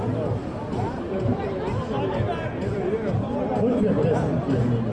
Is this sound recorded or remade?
recorded